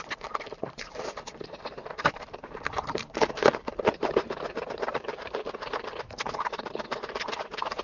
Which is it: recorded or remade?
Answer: remade